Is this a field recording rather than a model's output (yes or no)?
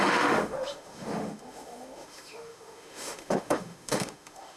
no